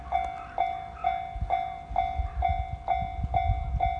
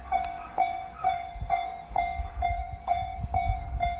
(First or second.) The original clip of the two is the first